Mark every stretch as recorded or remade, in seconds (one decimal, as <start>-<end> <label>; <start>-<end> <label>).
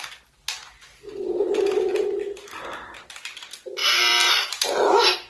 0.0-3.8 recorded; 3.8-4.5 remade; 4.5-5.3 recorded